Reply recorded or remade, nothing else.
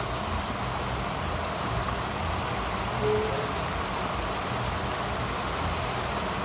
recorded